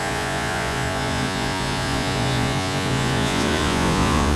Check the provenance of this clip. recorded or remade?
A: remade